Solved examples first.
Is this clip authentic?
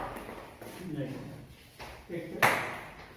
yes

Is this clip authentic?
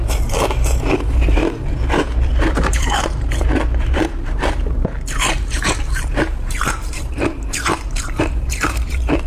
no